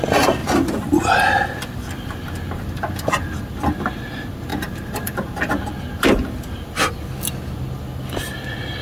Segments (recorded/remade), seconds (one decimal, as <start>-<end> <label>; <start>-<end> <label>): 0.0-0.4 recorded; 0.4-3.4 remade; 3.4-4.5 recorded; 4.5-7.3 remade; 7.3-8.8 recorded